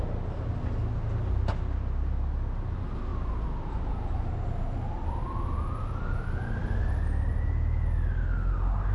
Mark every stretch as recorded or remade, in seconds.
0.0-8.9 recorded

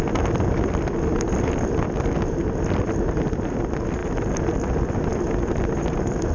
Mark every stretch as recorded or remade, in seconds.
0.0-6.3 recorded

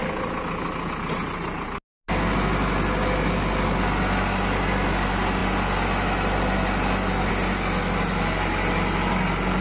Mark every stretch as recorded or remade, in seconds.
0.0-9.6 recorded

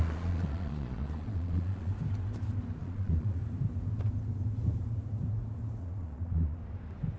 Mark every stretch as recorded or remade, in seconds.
0.0-1.9 remade; 1.9-2.8 recorded; 2.8-3.4 remade; 3.4-5.8 recorded; 5.8-6.6 remade; 6.6-7.2 recorded

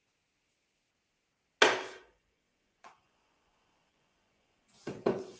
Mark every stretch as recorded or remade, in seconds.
0.0-1.9 recorded; 1.9-5.4 remade

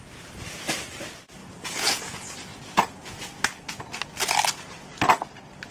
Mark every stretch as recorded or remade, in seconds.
0.0-1.4 recorded; 1.4-2.0 remade; 2.0-2.5 recorded; 2.5-3.1 remade; 3.1-5.7 recorded